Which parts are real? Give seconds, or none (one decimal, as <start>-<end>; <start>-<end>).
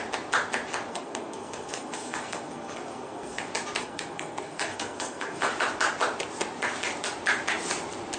0.0-0.9; 3.4-3.8; 5.5-8.2